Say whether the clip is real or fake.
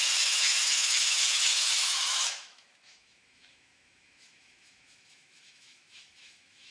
fake